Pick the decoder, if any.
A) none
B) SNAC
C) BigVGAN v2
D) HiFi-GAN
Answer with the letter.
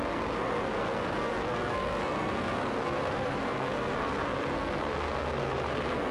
B